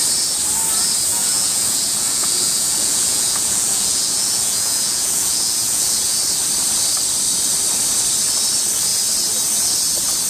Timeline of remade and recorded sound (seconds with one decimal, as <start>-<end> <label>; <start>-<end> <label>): 0.0-1.1 recorded; 1.1-6.2 remade; 6.2-10.3 recorded